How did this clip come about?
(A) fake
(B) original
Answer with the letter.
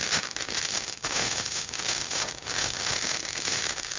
A